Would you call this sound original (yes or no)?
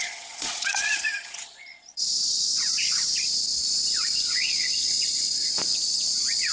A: no